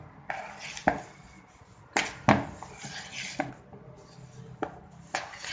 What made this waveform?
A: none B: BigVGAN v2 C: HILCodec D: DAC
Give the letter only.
A